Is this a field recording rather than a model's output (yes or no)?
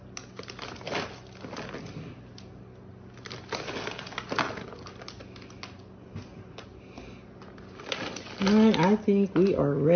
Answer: yes